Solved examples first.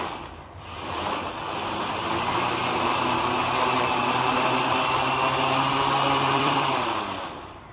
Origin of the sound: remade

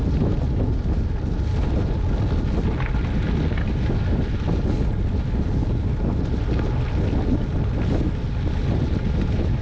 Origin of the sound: recorded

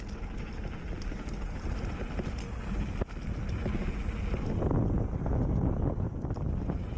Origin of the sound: recorded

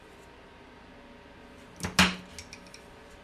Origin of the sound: recorded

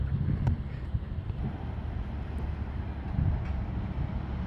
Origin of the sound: recorded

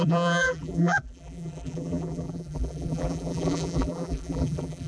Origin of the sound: remade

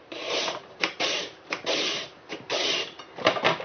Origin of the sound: remade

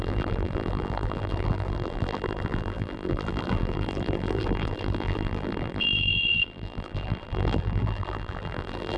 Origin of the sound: remade